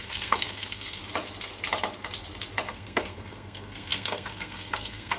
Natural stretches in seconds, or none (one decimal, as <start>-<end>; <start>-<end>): 1.0-2.7